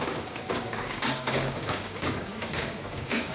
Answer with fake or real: fake